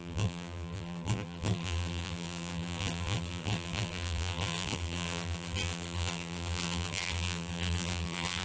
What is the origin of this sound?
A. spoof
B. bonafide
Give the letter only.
A